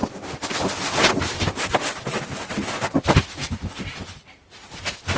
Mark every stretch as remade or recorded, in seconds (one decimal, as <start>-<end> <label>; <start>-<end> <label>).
0.0-3.4 recorded; 3.4-4.8 remade; 4.8-5.2 recorded